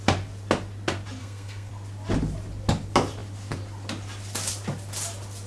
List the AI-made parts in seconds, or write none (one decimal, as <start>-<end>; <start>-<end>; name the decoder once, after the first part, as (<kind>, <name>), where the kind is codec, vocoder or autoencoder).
1.2-1.7 (codec, SNAC)